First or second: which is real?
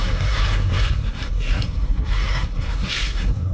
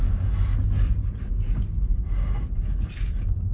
second